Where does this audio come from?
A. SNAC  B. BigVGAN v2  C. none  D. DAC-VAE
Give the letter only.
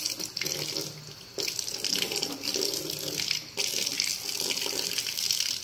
C